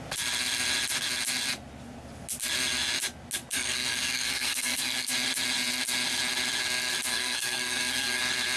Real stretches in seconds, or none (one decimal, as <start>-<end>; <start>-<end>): 0.0-3.5; 5.1-7.1; 8.2-8.6